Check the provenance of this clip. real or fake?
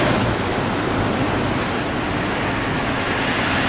real